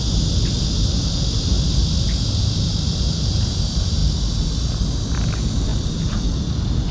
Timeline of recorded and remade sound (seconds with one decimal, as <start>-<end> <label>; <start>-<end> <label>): 0.0-6.9 recorded